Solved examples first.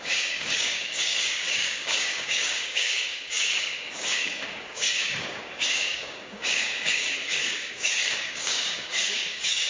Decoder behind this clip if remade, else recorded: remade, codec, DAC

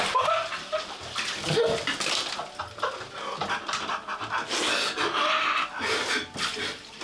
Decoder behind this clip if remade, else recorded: recorded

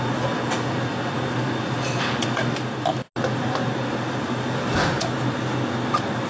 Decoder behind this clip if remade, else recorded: recorded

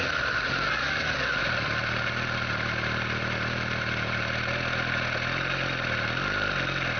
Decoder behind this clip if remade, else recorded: recorded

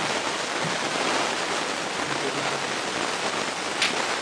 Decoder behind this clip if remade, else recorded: recorded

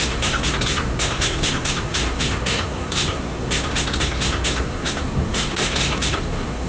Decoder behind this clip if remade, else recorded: remade, codec, SNAC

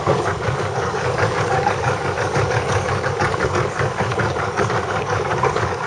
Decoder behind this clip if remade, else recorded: remade, codec, DAC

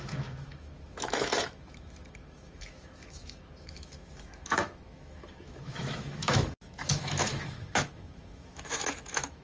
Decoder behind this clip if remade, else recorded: remade, autoencoder, DAC-VAE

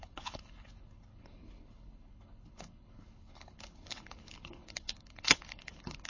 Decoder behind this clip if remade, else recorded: remade, codec, HILCodec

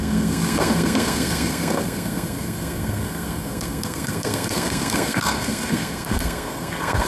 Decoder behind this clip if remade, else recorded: remade, codec, SNAC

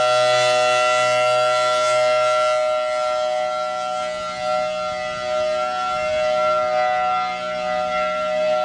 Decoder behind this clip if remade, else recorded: recorded